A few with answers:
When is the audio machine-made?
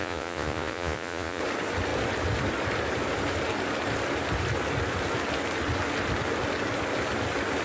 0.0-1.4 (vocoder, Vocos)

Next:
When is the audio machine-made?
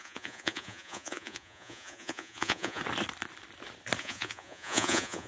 0.0-2.8 (vocoder, Vocos); 4.0-5.3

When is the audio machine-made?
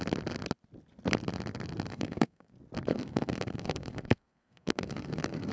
1.9-2.5 (codec, SNAC); 2.9-5.5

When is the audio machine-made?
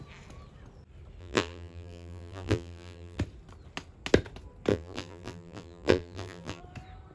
1.2-3.2 (vocoder, BigVGAN v2); 4.7-6.6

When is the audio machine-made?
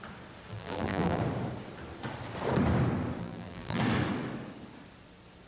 0.5-1.2 (vocoder, BigVGAN v2); 3.2-3.8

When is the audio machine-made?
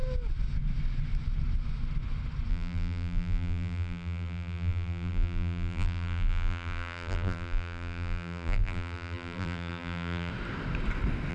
2.5-10.3 (vocoder, BigVGAN v2)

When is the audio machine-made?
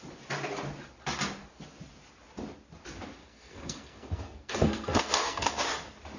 3.2-5.6 (codec, SNAC)